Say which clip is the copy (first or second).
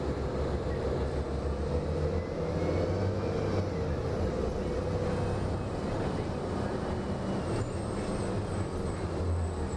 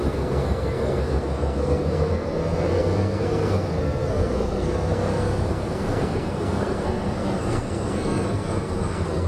second